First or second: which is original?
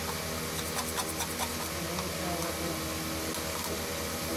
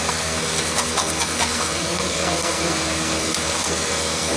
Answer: first